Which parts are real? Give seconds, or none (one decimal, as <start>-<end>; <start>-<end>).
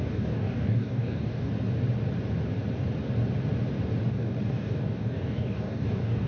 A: 1.5-4.1